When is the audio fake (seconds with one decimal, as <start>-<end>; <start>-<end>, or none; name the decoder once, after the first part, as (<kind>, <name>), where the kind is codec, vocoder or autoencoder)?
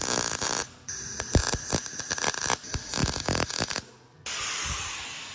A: none